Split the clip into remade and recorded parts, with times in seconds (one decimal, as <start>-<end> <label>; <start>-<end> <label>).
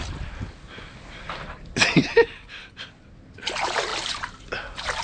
0.0-5.0 recorded